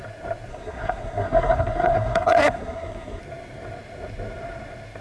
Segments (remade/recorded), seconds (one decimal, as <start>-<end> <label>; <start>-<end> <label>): 0.0-0.5 recorded; 0.5-3.2 remade; 3.2-5.0 recorded